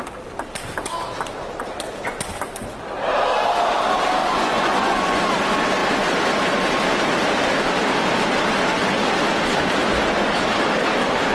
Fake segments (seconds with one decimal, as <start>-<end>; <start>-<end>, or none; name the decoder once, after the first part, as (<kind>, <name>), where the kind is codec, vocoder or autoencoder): 4.2-5.2 (vocoder, Vocos)